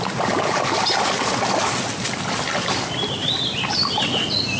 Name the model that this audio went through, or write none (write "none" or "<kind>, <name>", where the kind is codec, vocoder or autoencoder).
none